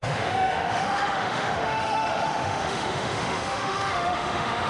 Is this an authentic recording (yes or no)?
no